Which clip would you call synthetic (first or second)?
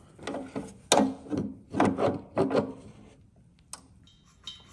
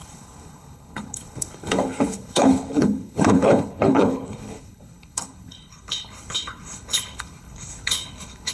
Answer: second